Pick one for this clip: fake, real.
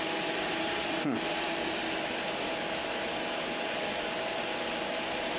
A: fake